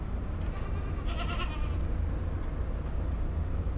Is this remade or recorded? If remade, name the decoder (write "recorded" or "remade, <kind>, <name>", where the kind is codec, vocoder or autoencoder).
recorded